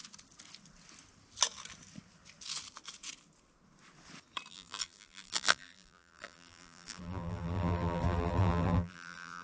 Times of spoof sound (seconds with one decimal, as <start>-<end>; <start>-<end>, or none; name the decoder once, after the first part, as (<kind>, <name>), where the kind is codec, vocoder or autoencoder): 4.5-9.4 (vocoder, BigVGAN v2)